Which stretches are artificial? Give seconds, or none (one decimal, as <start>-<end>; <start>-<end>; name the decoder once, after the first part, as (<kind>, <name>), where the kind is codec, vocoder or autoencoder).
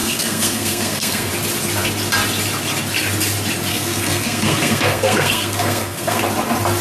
0.0-1.3 (codec, SNAC); 3.7-6.2